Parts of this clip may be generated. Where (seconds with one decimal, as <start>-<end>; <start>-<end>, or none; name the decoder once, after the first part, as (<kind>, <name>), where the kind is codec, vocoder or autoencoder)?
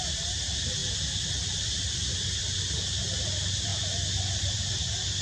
0.0-0.8 (vocoder, BigVGAN v2); 1.3-3.7; 4.4-5.2